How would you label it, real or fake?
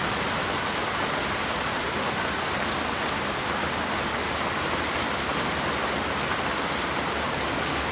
real